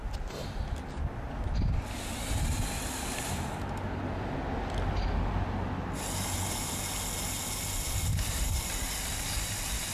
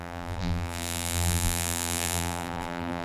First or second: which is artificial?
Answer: second